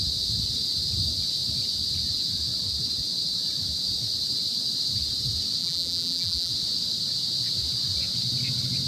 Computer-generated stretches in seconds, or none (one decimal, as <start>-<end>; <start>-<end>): 5.6-6.5